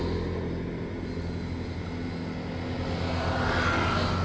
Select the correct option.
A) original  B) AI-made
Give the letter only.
A